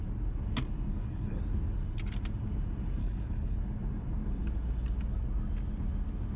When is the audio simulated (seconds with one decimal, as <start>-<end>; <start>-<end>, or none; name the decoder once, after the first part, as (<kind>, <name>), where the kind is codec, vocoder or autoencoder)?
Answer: 0.9-1.4 (codec, HILCodec); 3.0-3.6